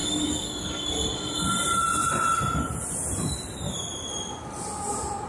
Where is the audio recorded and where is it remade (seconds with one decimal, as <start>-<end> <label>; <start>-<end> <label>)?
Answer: 0.0-0.9 remade; 0.9-5.3 recorded